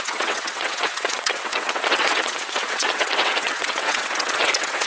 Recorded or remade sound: remade